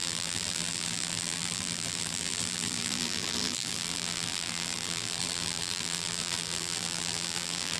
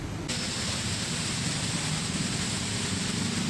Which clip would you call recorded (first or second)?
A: second